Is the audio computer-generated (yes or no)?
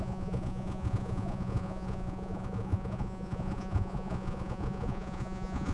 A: yes